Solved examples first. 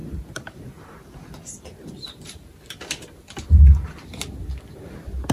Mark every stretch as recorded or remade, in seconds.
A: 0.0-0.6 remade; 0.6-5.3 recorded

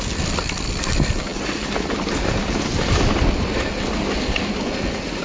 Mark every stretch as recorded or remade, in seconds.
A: 0.0-5.2 recorded

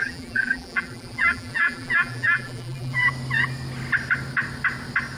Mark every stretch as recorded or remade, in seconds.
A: 0.0-3.1 remade; 3.1-5.2 recorded

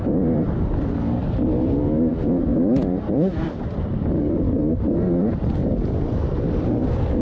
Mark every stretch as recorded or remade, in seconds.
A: 0.0-2.5 recorded; 2.5-4.9 remade; 4.9-5.6 recorded; 5.6-6.3 remade; 6.3-7.2 recorded

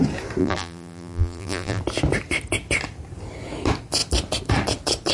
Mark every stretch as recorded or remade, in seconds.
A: 0.0-0.4 recorded; 0.4-1.8 remade; 1.8-5.1 recorded

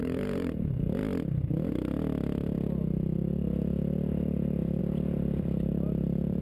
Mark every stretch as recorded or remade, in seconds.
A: 0.0-1.0 remade; 1.0-4.8 recorded; 4.8-6.4 remade